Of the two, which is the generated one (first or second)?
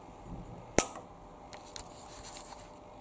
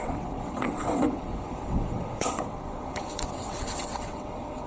second